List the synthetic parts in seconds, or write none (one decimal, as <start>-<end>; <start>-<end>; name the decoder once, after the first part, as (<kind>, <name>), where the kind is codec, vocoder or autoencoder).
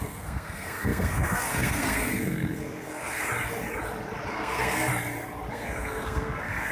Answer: 0.0-3.3 (codec, SNAC); 4.3-4.9; 5.5-6.7